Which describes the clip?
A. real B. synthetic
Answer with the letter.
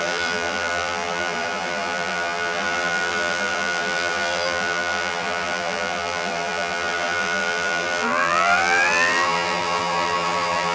B